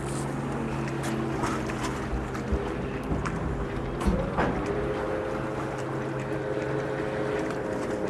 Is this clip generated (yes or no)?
no